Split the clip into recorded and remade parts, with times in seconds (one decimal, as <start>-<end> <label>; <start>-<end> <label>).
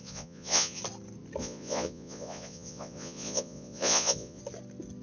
0.0-0.8 remade; 0.8-1.4 recorded; 1.4-4.4 remade; 4.4-5.0 recorded